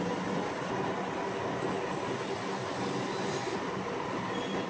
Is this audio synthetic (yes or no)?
no